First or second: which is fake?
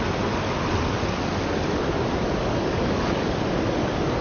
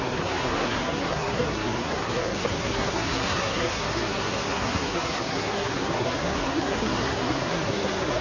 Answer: second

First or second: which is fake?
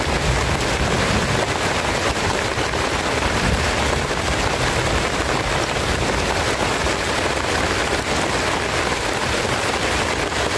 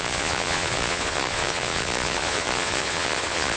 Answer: second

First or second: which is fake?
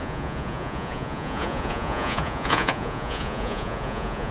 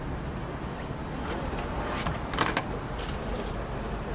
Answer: first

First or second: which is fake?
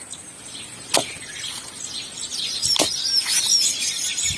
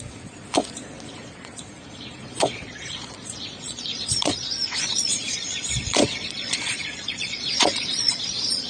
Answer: second